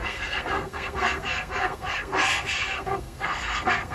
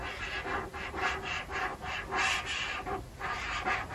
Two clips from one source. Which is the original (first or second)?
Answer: second